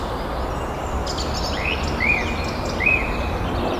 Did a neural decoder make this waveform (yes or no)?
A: no